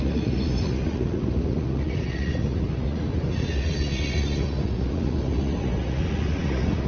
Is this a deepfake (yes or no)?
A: yes